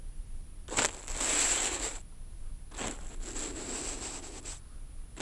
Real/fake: real